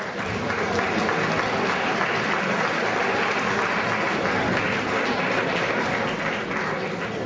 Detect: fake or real real